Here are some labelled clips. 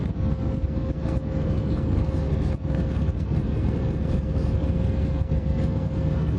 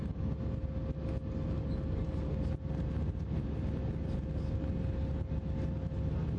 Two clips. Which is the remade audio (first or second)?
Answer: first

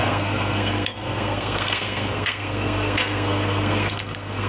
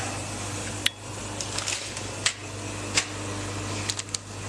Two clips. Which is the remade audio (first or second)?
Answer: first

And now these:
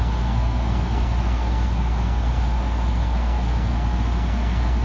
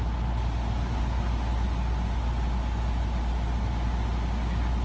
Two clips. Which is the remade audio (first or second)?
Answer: first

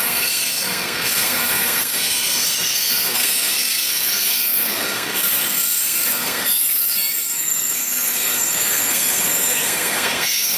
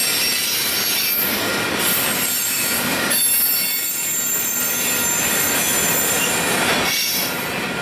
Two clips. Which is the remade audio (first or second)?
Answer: first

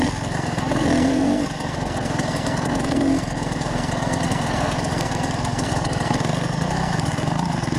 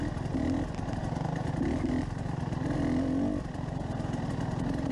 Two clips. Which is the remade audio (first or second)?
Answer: first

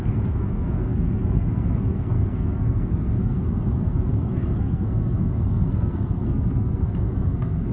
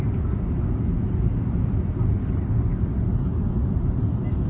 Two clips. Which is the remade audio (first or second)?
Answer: first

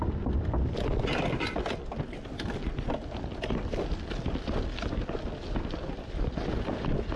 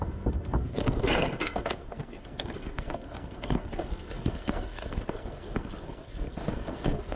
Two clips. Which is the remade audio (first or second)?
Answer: second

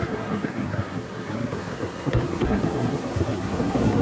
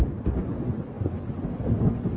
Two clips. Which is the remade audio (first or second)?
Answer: first